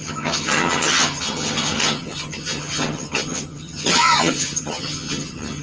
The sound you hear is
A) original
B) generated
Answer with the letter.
B